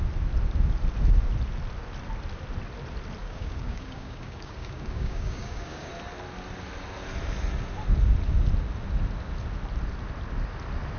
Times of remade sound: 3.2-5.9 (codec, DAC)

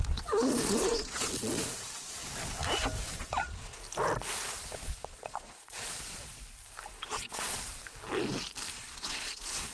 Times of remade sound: 0.0-2.2 (vocoder, Vocos); 3.2-3.8; 4.7-6.3; 7.0-7.8; 8.7-9.7